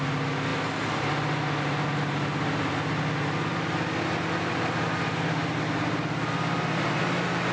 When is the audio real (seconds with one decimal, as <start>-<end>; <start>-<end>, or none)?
0.0-7.5